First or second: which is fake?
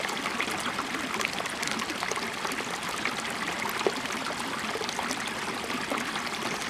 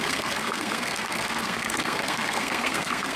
second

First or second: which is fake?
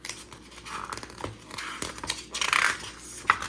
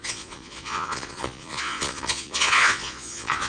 second